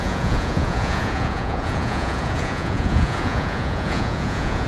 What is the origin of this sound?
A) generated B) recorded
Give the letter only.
A